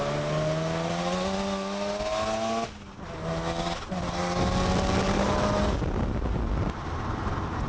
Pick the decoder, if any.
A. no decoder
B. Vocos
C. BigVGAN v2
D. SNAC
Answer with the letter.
A